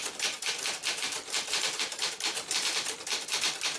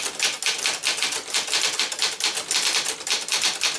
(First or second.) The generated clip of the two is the first